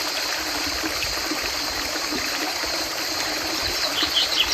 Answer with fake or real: real